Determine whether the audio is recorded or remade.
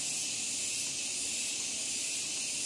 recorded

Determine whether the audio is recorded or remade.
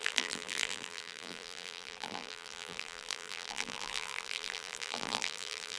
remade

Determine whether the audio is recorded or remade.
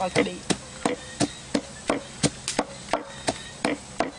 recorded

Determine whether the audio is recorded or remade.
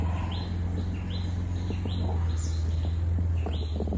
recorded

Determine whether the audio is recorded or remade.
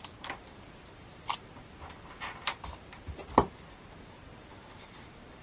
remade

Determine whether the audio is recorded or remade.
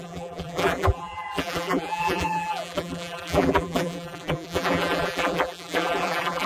remade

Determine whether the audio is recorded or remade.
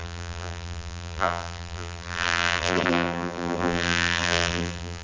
remade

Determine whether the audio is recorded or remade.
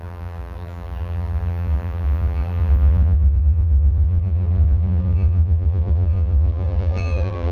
remade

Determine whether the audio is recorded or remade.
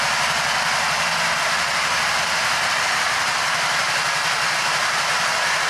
recorded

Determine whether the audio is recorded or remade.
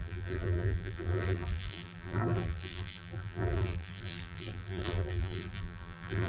remade